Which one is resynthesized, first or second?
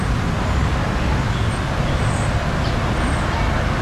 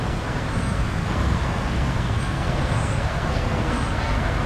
second